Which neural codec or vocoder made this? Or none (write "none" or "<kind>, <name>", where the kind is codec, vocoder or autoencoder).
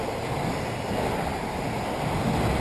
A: none